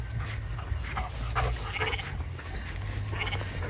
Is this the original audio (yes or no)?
yes